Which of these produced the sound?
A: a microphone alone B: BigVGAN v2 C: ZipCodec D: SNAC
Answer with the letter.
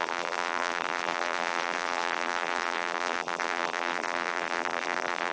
B